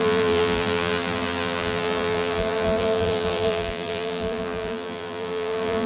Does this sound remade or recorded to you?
remade